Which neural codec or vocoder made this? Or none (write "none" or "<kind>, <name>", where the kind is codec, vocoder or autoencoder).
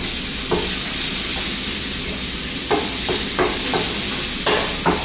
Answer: none